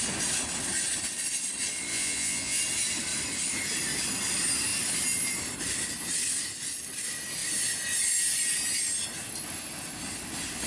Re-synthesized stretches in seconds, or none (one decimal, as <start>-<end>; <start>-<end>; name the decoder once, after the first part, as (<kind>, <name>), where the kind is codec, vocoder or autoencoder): 1.9-2.6 (vocoder, Vocos)